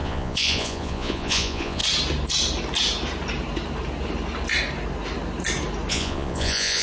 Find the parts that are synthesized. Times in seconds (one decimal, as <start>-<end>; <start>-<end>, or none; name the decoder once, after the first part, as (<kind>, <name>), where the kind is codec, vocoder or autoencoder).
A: 0.0-1.8 (vocoder, Vocos); 5.9-6.8